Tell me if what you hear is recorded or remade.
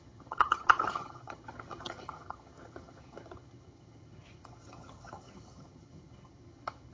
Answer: remade